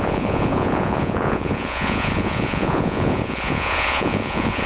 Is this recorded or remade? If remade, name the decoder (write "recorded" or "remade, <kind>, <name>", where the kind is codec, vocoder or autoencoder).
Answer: remade, vocoder, Vocos